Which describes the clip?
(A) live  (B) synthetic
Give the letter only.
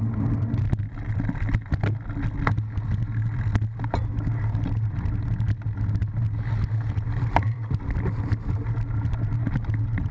A